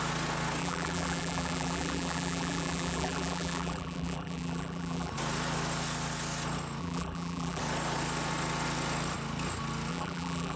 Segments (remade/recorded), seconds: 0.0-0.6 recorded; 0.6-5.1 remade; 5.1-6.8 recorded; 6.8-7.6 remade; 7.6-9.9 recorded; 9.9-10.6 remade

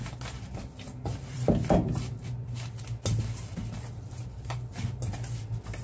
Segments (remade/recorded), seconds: 0.0-1.1 recorded; 1.1-2.8 remade; 2.8-3.6 recorded; 3.6-4.8 remade; 4.8-5.8 recorded

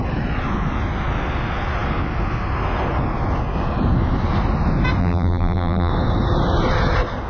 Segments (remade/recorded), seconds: 0.0-5.0 recorded; 5.0-5.9 remade; 5.9-7.3 recorded

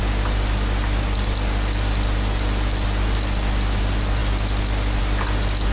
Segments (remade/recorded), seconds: 0.0-5.7 recorded

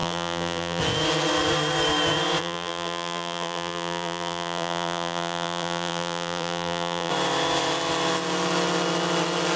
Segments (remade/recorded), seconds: 0.0-0.8 remade; 0.8-2.4 recorded; 2.4-7.1 remade; 7.1-9.6 recorded

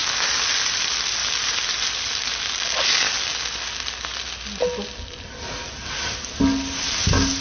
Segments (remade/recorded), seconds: 0.0-0.6 remade; 0.6-1.2 recorded; 1.2-2.5 remade; 2.5-7.4 recorded

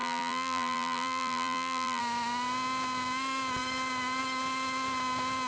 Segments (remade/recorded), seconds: 0.0-2.0 remade; 2.0-5.5 recorded